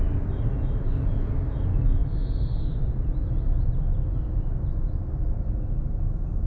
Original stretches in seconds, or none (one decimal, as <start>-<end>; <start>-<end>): 0.0-6.5